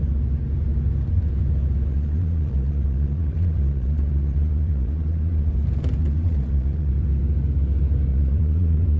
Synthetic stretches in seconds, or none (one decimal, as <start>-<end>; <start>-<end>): 1.9-5.5; 6.0-6.9; 8.1-9.0

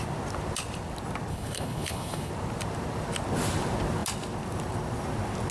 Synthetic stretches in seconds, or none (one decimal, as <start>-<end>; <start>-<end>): 1.3-2.3

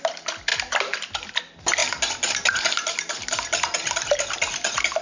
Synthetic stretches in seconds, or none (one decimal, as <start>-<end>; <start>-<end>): none

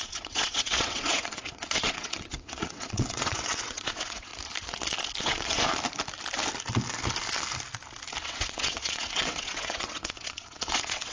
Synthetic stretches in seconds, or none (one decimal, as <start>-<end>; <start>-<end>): 0.0-4.3; 5.2-5.7; 8.2-11.1

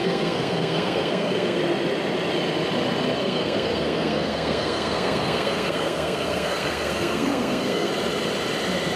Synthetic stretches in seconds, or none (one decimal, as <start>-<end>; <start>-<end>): 0.0-1.6; 3.2-7.9

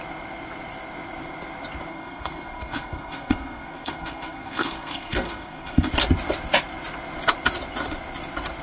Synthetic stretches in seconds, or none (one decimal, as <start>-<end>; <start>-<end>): 1.9-5.9